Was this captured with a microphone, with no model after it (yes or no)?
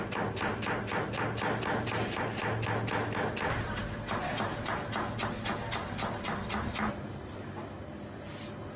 yes